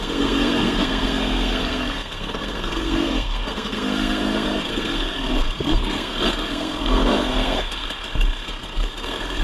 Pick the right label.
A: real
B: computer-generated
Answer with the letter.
B